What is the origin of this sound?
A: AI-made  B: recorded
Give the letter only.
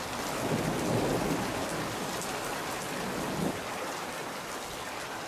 B